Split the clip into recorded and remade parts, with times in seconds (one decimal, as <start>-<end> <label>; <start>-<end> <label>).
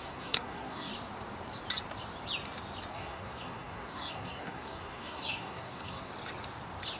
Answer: 0.0-0.9 remade; 0.9-2.9 recorded; 2.9-6.1 remade; 6.1-7.0 recorded